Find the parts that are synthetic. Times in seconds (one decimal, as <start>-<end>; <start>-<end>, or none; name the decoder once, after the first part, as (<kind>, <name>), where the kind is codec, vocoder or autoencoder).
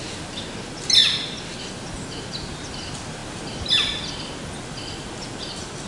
1.0-1.6 (vocoder, BigVGAN v2)